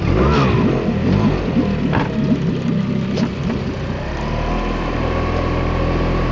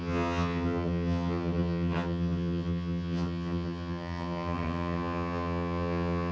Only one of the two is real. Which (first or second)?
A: first